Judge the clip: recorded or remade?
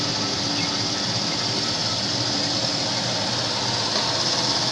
recorded